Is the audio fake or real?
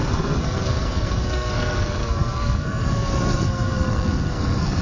fake